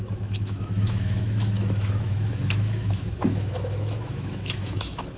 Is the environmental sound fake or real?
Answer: fake